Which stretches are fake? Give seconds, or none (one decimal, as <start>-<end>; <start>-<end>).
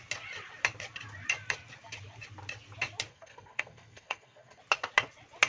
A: 3.1-4.6